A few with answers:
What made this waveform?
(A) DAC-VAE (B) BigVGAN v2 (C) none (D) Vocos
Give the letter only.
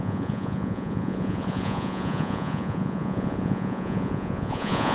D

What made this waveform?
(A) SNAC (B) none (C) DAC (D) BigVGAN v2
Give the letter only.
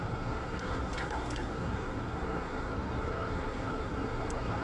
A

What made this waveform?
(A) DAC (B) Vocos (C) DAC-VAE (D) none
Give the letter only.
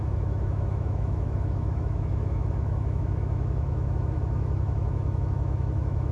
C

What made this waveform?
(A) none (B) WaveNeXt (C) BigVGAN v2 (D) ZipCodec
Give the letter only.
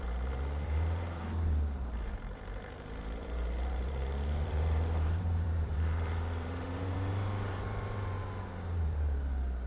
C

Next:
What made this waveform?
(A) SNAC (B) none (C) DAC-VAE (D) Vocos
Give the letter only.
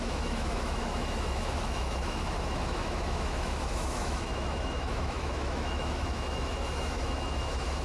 C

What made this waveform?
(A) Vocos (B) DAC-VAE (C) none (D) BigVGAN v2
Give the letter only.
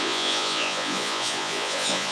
A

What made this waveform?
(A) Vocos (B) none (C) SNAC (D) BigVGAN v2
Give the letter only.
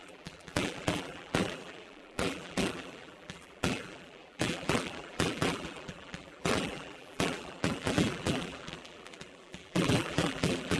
D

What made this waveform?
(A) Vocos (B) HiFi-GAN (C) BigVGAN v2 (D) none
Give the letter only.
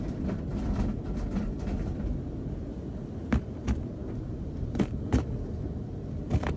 D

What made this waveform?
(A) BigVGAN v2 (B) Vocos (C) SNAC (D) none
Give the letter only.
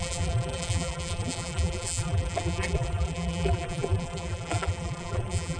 A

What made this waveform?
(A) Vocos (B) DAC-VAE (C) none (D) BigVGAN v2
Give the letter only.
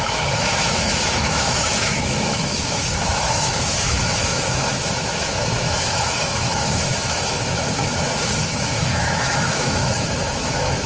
B